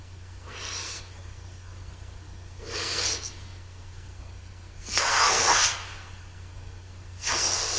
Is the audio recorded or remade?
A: remade